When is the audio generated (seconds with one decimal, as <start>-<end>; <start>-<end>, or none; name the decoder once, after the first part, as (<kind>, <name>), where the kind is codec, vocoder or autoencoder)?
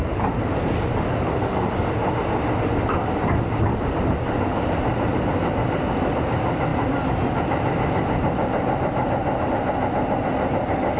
none